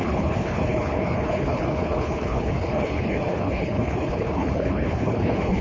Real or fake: fake